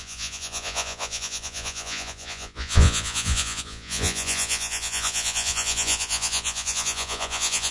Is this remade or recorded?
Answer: remade